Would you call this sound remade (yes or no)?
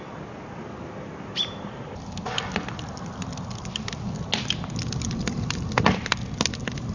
no